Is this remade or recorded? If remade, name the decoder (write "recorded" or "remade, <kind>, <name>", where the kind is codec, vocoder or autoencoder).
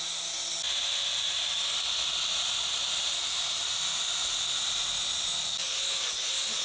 recorded